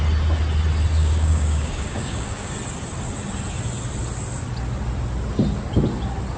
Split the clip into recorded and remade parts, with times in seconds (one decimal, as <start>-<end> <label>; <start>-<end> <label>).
0.0-1.0 recorded; 1.0-2.5 remade; 2.5-6.4 recorded